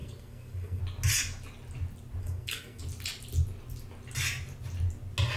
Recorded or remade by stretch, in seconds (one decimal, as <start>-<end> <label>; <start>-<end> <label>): 0.0-0.8 remade; 0.8-2.2 recorded; 2.2-2.8 remade; 2.8-5.4 recorded